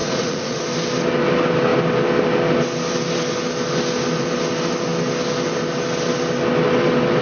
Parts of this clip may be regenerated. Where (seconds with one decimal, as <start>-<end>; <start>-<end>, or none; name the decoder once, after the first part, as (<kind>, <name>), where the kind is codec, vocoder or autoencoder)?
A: 0.0-0.6 (vocoder, Vocos)